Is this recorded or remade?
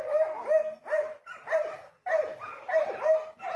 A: recorded